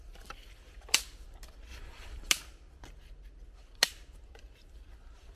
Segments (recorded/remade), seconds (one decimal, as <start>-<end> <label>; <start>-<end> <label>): 0.0-1.7 recorded; 1.7-2.3 remade; 2.3-5.4 recorded